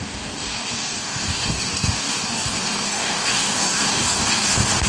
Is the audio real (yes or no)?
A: no